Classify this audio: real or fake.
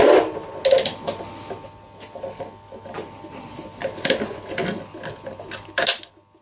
real